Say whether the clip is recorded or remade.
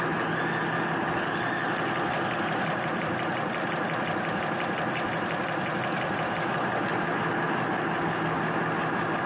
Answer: recorded